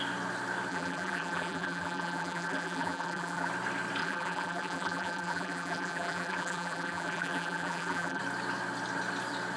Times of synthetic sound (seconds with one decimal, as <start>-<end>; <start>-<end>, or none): 0.7-3.5; 4.0-8.2